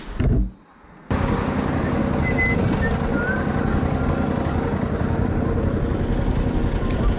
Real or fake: real